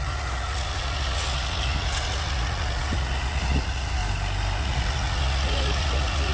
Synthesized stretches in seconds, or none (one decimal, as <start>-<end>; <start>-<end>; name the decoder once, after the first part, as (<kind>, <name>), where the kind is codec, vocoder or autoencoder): 0.0-4.0 (vocoder, Vocos); 4.6-6.3